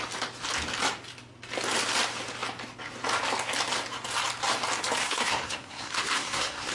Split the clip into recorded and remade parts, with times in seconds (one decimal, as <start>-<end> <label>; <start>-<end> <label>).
0.0-5.0 recorded; 5.0-6.7 remade